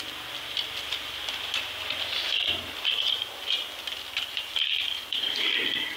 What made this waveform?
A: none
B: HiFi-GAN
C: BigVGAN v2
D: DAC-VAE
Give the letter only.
A